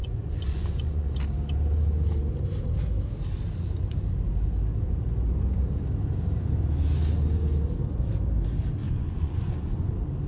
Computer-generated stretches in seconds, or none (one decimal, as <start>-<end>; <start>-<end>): 0.0-1.1; 8.8-9.9